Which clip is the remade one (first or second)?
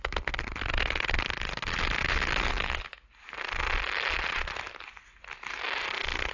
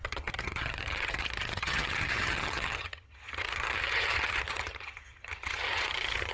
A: second